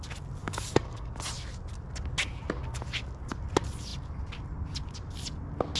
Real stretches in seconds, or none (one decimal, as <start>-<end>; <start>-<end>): 0.0-0.4; 1.2-5.8